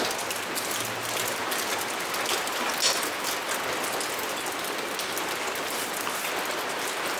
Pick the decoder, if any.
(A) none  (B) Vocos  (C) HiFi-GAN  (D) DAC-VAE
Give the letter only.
A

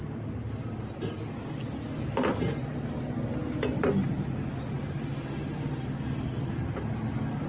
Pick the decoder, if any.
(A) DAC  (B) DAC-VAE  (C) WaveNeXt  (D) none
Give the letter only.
D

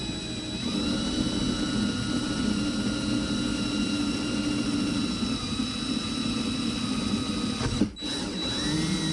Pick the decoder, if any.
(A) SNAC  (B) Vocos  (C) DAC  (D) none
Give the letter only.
D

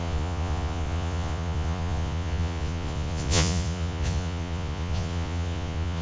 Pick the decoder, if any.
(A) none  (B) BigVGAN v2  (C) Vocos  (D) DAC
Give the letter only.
C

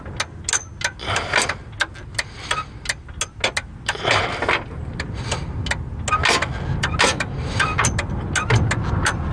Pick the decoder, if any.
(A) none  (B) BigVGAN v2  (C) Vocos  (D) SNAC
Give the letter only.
A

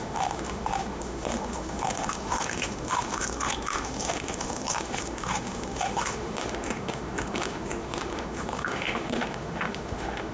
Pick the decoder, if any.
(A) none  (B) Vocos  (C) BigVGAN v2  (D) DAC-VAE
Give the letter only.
D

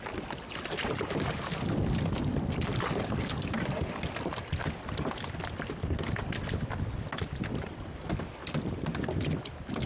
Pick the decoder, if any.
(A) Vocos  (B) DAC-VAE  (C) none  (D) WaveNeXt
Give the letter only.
C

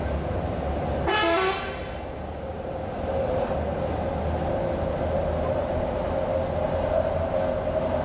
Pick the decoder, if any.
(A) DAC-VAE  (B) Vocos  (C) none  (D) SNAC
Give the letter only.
C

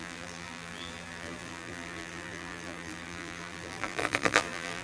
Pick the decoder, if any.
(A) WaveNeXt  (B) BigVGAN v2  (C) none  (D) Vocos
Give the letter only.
B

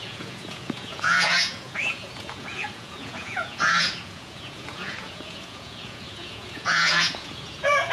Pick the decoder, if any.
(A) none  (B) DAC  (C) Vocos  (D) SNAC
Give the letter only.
C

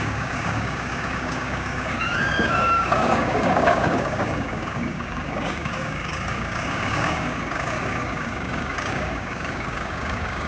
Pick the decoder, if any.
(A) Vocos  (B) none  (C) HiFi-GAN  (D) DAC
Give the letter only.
D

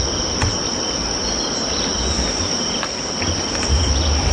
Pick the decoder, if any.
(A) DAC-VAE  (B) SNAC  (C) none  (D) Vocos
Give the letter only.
C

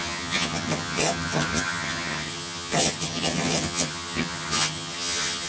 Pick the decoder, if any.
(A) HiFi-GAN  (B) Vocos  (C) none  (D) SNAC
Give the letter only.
A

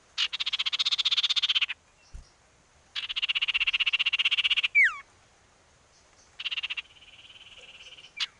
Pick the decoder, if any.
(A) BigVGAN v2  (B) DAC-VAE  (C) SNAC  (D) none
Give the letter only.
D